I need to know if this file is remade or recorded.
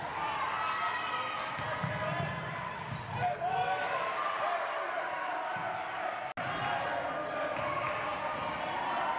recorded